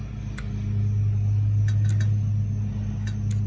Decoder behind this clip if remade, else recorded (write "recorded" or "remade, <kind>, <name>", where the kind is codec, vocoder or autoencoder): recorded